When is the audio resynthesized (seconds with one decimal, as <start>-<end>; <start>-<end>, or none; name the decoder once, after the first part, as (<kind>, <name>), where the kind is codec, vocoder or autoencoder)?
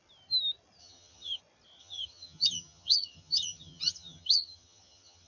0.8-1.4 (vocoder, HiFi-GAN); 1.8-5.3